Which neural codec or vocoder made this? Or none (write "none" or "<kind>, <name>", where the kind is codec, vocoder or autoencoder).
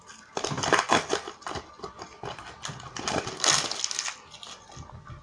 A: none